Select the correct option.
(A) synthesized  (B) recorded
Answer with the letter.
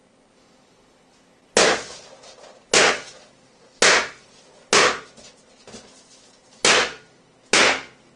B